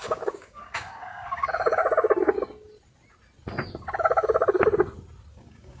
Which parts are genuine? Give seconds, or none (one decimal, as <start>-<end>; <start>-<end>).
1.8-5.3